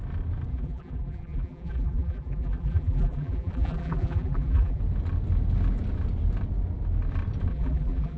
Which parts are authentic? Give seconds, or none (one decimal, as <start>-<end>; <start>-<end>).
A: 0.0-0.5; 4.8-7.5